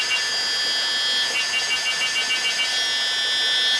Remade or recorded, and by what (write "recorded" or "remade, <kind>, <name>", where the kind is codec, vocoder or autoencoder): recorded